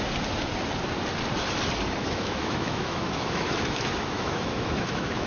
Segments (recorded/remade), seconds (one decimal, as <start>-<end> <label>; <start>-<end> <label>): 0.0-2.0 recorded; 2.0-5.3 remade